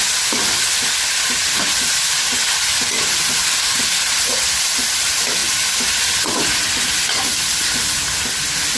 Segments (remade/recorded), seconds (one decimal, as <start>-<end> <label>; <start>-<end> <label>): 0.0-8.8 recorded